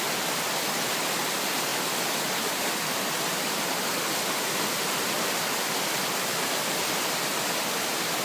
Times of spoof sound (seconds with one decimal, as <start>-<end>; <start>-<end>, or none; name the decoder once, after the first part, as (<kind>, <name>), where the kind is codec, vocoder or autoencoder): none